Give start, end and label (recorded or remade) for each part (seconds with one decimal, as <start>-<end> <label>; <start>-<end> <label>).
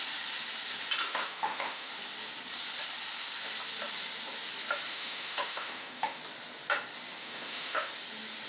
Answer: 0.0-1.1 recorded; 1.1-1.9 remade; 1.9-4.9 recorded; 4.9-6.2 remade; 6.2-7.2 recorded; 7.2-7.9 remade; 7.9-8.5 recorded